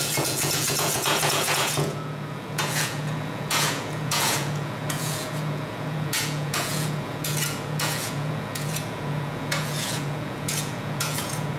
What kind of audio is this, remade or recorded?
remade